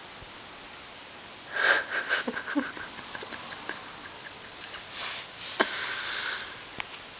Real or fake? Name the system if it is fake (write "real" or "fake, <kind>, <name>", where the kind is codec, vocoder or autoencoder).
real